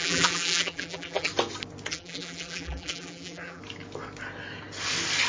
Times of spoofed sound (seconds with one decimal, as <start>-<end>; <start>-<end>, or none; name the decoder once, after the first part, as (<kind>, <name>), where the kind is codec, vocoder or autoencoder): 0.0-1.3 (vocoder, BigVGAN v2); 1.9-3.6